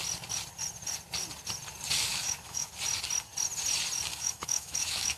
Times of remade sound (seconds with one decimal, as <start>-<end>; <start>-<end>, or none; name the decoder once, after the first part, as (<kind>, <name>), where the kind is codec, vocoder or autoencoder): 2.1-2.7 (autoencoder, DAC-VAE); 4.1-5.2